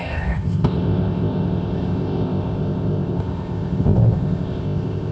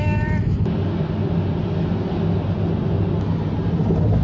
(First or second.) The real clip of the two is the second